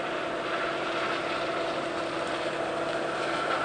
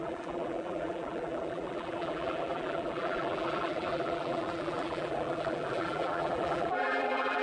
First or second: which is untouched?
first